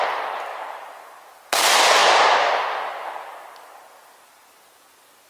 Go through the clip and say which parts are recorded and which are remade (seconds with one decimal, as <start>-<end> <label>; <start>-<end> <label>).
0.0-0.5 recorded; 0.5-1.3 remade; 1.3-5.3 recorded